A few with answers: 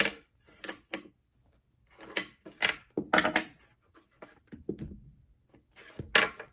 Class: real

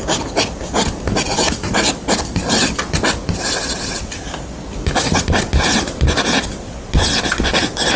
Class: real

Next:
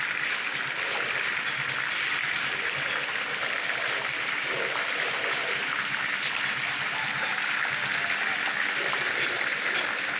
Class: real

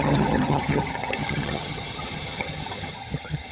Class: fake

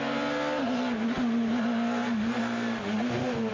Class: real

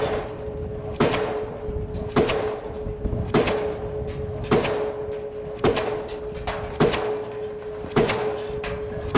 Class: real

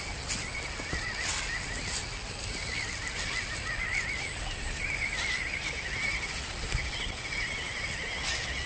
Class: real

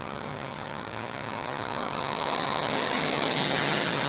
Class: fake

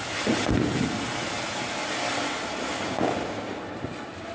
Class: real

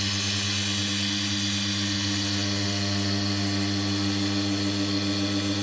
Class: real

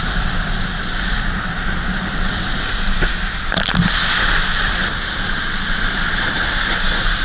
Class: real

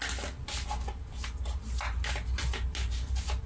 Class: real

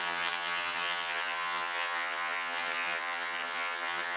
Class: fake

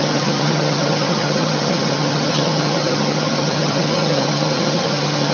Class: fake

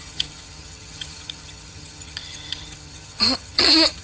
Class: fake